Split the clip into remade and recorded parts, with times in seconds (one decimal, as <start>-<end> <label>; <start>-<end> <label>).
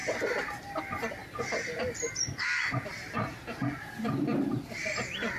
0.0-0.6 recorded; 0.6-5.4 remade